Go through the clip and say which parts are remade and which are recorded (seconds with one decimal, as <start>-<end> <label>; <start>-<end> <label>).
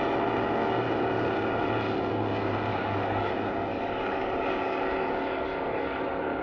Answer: 0.0-2.7 recorded; 2.7-3.3 remade; 3.3-3.7 recorded; 3.7-6.4 remade